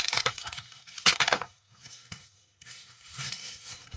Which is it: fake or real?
fake